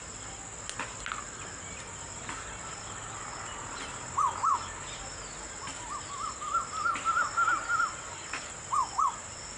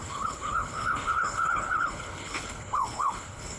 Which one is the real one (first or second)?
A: first